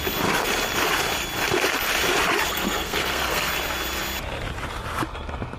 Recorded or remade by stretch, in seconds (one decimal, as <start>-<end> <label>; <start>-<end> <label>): 0.0-2.5 recorded; 2.5-3.5 remade; 3.5-5.6 recorded